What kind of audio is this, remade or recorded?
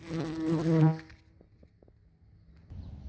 recorded